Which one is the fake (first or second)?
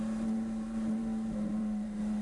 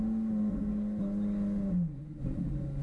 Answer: first